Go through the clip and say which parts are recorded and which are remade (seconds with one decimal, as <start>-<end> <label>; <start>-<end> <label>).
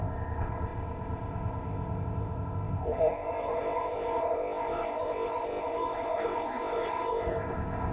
0.0-7.9 remade